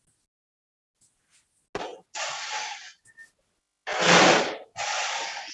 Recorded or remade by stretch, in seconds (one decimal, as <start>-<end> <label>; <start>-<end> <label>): 0.0-5.5 recorded